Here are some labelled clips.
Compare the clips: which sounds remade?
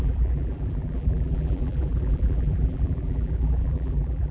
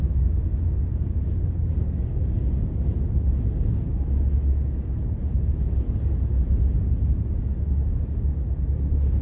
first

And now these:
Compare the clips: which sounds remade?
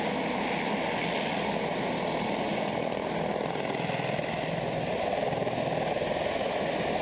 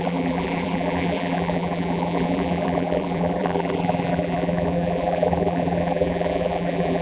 second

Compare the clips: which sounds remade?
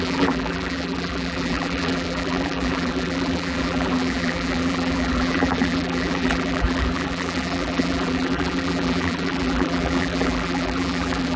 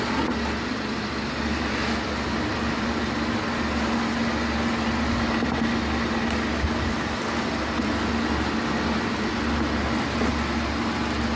first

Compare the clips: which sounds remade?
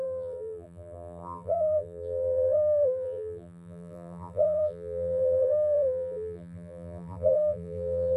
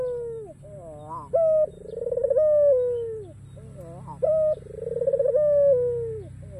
first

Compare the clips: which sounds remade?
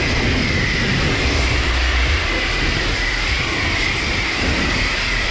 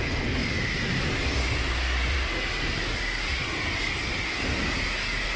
first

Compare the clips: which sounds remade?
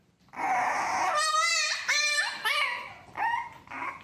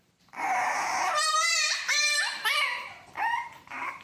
second